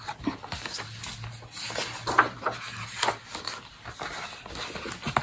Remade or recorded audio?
recorded